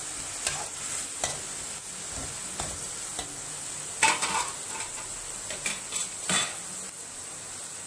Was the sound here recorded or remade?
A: recorded